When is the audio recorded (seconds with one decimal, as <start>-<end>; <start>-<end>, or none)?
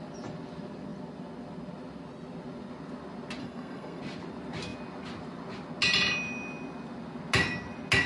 0.0-3.4; 4.0-8.1